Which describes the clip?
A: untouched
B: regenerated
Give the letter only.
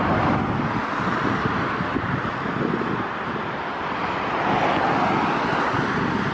A